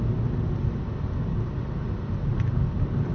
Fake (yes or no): no